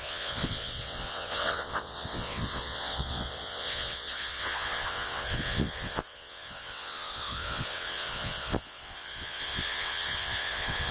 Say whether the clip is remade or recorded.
remade